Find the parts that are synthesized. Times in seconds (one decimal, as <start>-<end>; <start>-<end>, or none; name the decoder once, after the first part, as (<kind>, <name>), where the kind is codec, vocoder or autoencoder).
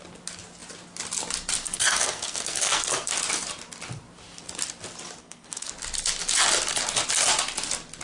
1.6-3.1 (codec, SNAC); 5.2-5.7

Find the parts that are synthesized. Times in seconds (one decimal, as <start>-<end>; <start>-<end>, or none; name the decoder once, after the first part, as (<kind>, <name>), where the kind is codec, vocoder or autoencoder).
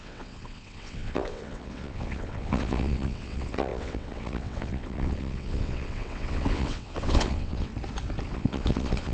0.0-7.7 (vocoder, WaveNeXt); 8.3-9.1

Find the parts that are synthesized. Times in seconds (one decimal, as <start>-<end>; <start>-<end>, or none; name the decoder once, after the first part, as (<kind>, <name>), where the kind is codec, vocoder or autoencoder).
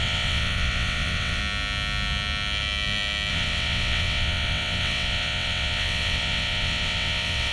0.0-1.4 (vocoder, WaveNeXt); 3.3-7.5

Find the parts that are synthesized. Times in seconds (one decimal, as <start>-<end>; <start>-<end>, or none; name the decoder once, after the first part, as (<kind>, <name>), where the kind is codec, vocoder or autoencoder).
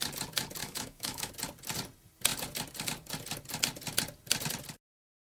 0.6-1.3 (autoencoder, DAC-VAE)